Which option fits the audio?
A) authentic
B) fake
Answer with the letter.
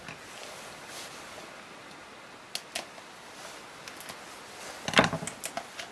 A